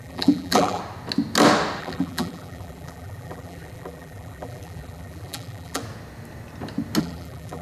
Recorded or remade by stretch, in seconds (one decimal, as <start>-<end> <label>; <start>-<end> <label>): 0.0-0.8 remade; 0.8-1.8 recorded; 1.8-5.8 remade; 5.8-7.0 recorded; 7.0-7.6 remade